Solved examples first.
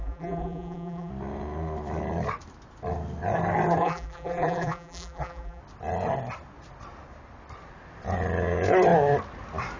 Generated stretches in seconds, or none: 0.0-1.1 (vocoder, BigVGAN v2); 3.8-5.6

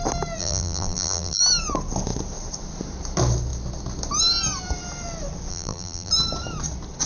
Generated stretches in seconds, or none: 0.4-1.4 (vocoder, BigVGAN v2); 5.5-6.1

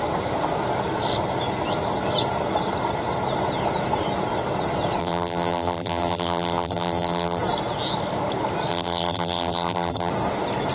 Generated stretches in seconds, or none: 5.0-7.4 (vocoder, BigVGAN v2); 8.7-10.1

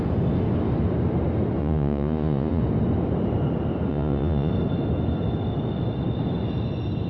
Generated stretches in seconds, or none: 1.6-2.6 (vocoder, Vocos); 3.9-4.5